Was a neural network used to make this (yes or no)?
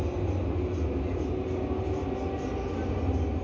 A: no